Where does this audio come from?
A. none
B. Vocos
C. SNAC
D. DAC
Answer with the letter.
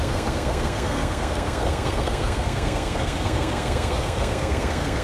C